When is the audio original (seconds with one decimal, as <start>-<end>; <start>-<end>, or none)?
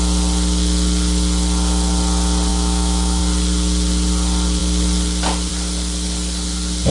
0.0-2.5; 3.2-6.9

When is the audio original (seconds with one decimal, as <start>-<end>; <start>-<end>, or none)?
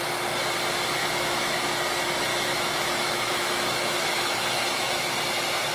0.0-1.0; 1.6-2.3; 5.1-5.7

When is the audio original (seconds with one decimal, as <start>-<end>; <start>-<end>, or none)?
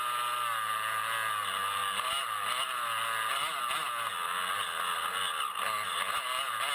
0.0-6.7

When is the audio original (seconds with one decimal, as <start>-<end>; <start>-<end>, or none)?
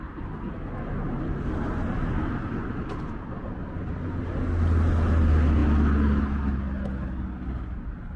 0.0-8.2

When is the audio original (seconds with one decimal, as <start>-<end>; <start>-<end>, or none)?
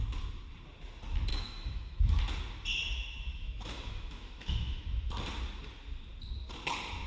0.0-1.3; 2.2-3.3; 5.1-7.1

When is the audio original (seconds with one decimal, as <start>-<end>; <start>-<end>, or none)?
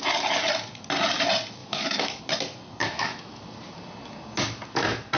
0.0-1.6; 2.2-2.8; 3.4-5.2